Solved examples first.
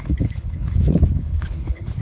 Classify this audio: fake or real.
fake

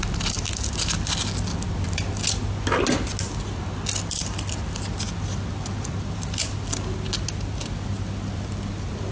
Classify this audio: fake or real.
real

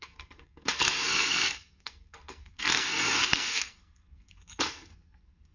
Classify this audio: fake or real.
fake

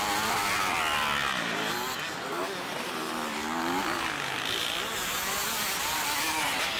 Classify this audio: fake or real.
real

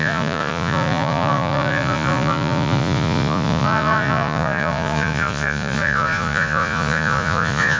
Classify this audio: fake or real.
fake